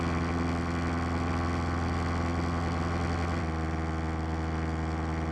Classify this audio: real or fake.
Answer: real